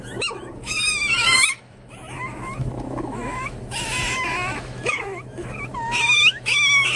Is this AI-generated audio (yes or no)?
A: yes